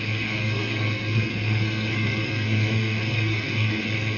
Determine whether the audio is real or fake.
fake